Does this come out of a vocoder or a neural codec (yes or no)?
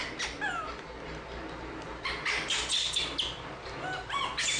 no